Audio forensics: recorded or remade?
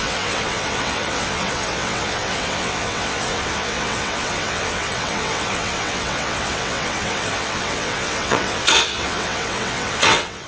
remade